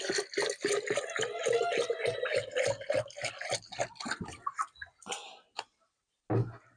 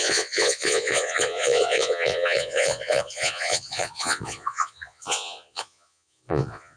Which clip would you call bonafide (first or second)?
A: first